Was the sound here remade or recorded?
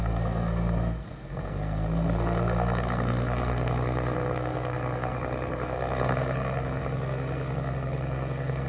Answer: remade